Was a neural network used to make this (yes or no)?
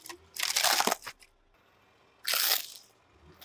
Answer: no